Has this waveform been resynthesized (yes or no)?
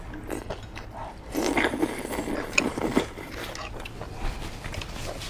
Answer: no